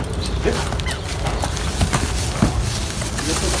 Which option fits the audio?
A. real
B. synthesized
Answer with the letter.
A